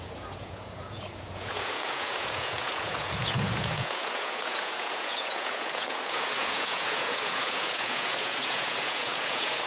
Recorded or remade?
remade